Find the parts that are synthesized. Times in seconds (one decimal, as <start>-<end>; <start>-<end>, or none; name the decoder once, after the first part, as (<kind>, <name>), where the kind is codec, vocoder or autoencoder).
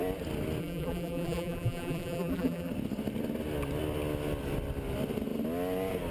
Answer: 0.6-2.7 (vocoder, BigVGAN v2)